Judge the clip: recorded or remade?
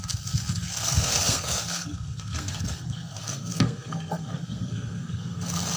remade